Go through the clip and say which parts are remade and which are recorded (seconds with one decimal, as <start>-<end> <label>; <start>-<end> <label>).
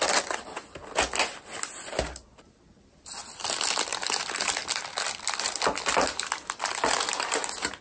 0.0-7.8 recorded